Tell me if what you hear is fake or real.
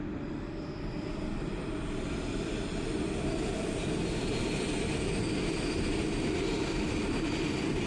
real